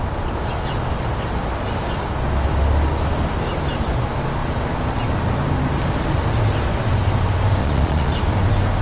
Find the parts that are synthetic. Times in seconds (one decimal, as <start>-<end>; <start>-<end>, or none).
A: 7.6-8.1